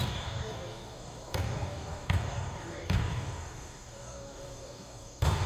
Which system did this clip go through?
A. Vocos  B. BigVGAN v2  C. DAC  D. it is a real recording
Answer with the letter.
C